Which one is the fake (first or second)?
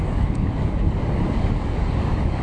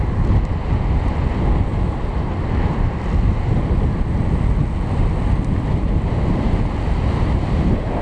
first